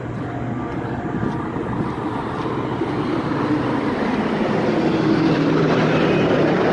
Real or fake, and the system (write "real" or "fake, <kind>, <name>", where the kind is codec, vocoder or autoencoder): real